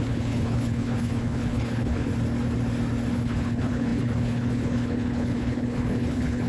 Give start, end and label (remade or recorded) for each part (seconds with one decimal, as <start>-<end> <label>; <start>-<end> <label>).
0.0-2.1 remade; 2.1-3.1 recorded; 3.1-6.5 remade